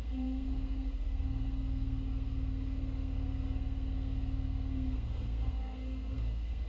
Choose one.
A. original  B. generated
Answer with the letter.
B